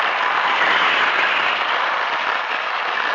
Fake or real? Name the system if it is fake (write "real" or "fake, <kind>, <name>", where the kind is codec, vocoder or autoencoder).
real